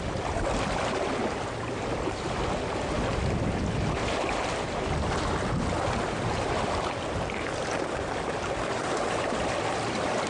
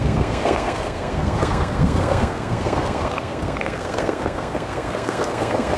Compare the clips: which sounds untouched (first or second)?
first